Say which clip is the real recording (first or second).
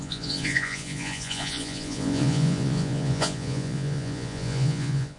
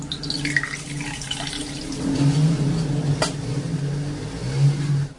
second